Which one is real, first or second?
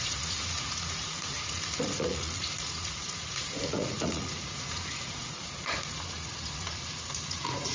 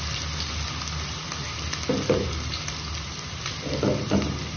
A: second